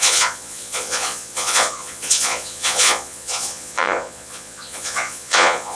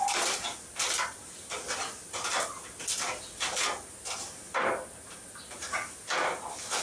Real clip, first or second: second